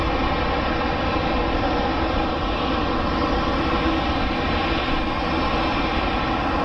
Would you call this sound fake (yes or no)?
no